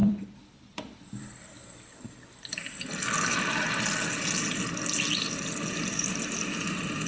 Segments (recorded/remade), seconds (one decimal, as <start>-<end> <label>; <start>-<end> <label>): 0.0-1.6 remade; 1.6-5.9 recorded; 5.9-7.1 remade